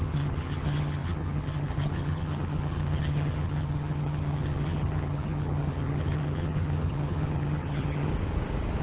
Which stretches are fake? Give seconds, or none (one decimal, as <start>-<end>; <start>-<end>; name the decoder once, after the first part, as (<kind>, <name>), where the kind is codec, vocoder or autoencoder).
0.0-8.1 (vocoder, HiFi-GAN)